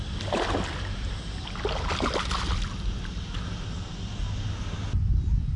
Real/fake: real